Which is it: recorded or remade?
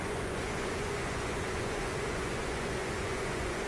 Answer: remade